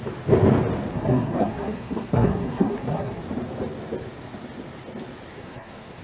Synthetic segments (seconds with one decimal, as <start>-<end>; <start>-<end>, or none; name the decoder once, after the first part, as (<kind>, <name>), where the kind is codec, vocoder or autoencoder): 0.9-3.2 (codec, SNAC); 5.3-6.0